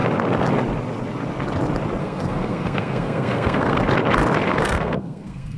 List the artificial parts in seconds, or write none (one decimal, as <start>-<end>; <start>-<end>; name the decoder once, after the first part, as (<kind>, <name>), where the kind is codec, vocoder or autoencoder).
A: 2.0-3.8 (codec, SNAC); 4.5-5.6